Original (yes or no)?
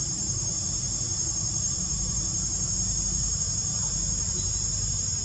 yes